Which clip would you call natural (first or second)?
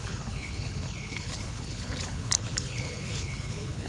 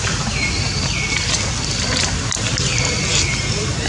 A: second